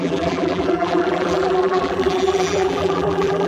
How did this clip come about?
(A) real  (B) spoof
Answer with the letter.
B